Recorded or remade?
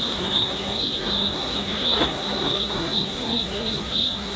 remade